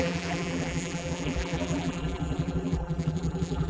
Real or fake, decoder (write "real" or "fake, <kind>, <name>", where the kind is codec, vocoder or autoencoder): fake, vocoder, BigVGAN v2